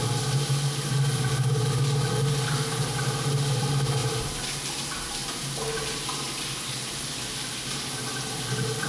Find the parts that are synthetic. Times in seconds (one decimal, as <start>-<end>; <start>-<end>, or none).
4.0-4.6